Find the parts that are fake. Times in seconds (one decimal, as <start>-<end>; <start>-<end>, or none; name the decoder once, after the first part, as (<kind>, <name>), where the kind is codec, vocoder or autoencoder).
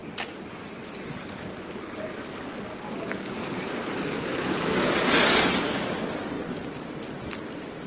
none